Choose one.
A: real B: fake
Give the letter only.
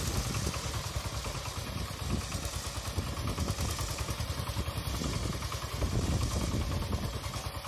A